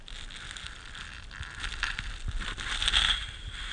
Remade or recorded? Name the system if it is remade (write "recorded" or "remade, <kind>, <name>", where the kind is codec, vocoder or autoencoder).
recorded